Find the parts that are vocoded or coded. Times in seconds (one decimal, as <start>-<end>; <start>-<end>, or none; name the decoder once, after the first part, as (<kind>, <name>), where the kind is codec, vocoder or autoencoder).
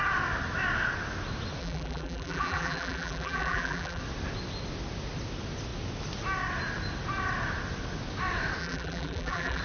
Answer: 1.6-4.0 (vocoder, BigVGAN v2); 8.6-9.6